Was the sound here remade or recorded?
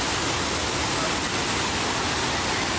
recorded